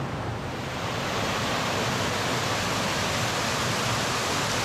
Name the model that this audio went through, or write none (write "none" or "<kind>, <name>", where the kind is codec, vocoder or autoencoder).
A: none